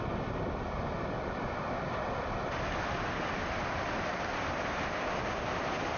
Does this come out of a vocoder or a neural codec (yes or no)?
no